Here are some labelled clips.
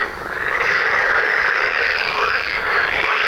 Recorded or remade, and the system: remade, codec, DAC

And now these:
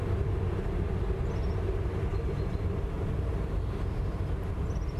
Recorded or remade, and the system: recorded